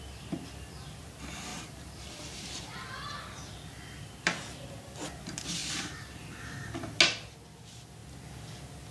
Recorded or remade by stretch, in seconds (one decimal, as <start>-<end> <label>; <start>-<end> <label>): 0.0-1.5 recorded; 1.5-3.1 remade; 3.1-5.6 recorded; 5.6-6.3 remade; 6.3-8.9 recorded